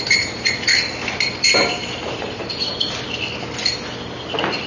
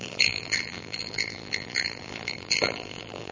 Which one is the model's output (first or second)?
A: second